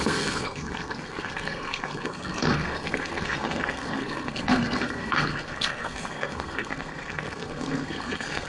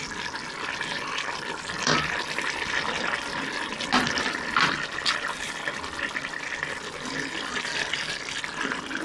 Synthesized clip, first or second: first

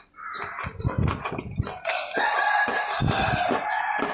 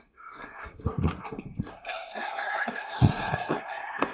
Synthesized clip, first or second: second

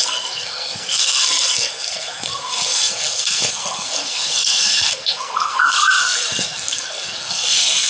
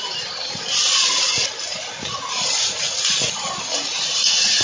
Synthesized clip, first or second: first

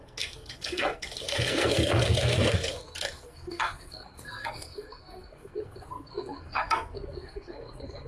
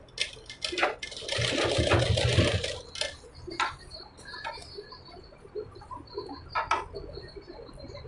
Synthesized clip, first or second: first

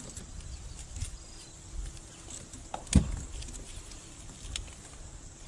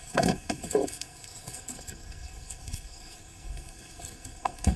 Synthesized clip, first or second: second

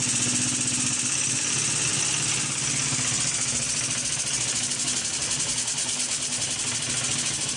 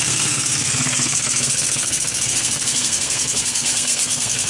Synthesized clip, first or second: second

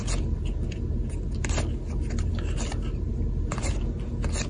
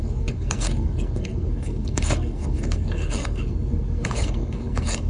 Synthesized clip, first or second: second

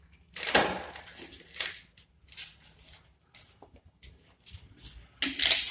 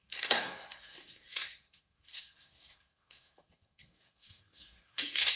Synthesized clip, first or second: second